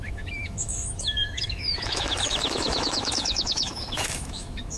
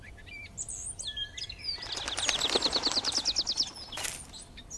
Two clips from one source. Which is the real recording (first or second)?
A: second